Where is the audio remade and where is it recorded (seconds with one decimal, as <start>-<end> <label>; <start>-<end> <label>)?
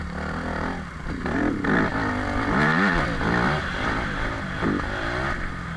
0.0-5.8 recorded